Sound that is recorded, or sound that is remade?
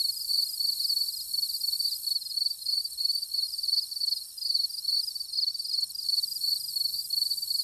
recorded